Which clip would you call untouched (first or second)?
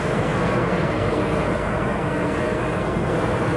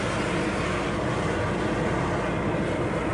second